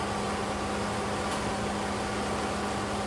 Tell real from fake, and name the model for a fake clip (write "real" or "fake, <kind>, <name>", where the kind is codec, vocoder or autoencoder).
real